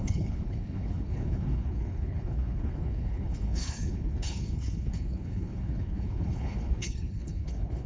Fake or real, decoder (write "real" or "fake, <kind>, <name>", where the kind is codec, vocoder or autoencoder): fake, codec, HILCodec